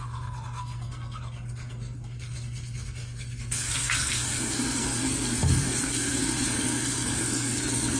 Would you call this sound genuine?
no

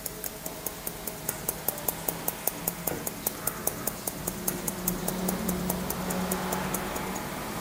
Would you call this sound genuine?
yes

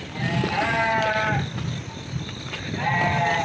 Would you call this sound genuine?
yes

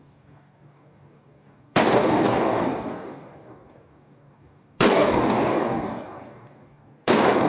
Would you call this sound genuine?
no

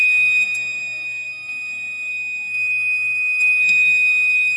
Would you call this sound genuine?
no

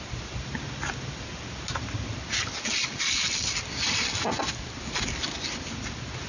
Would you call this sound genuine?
yes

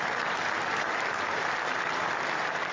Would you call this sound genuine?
yes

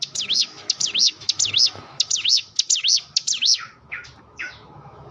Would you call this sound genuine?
no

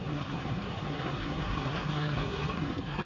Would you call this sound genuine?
no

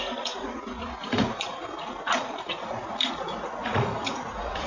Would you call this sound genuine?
no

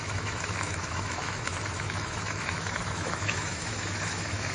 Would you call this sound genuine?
no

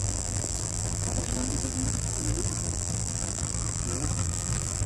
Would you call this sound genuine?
no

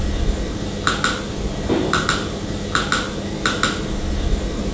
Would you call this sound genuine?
yes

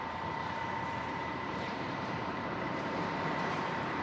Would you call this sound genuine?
no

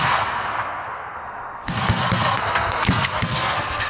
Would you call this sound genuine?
no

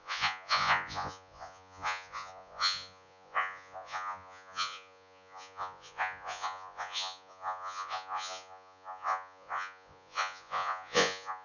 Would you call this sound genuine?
no